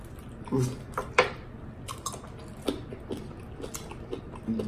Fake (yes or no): no